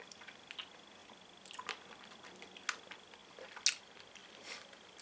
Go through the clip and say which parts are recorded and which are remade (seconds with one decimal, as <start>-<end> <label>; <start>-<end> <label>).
0.0-5.0 recorded